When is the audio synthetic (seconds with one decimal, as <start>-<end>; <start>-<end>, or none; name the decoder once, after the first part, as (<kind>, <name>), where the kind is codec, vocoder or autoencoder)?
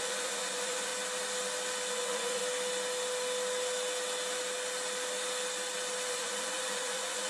0.0-0.9 (vocoder, Vocos); 1.9-2.4; 6.1-7.3